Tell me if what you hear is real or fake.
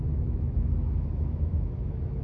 fake